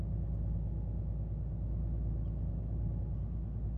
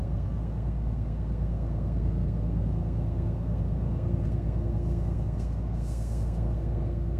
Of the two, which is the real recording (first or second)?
first